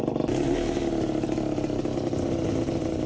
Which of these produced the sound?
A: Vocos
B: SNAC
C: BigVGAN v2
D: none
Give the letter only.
D